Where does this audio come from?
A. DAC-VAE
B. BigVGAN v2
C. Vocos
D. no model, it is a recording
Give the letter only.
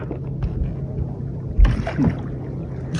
D